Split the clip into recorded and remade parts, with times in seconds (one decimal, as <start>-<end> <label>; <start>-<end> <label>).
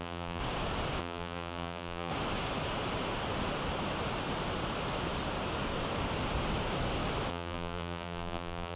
0.0-0.4 remade; 0.4-1.0 recorded; 1.0-2.1 remade; 2.1-7.3 recorded; 7.3-8.8 remade